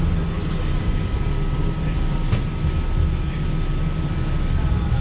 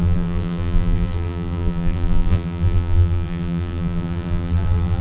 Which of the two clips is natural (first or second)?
first